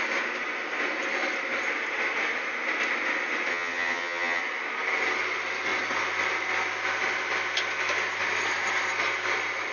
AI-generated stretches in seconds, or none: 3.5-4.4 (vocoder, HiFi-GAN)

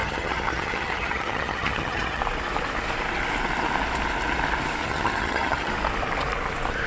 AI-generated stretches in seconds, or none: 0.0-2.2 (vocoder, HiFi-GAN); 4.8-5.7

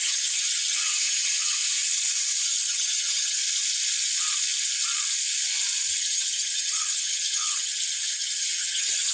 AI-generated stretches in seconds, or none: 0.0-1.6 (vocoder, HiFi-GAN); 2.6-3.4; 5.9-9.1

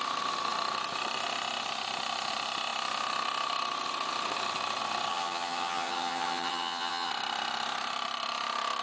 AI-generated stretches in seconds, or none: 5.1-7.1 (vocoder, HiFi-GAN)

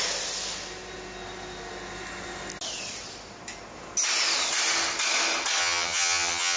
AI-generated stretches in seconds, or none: 5.6-6.6 (vocoder, HiFi-GAN)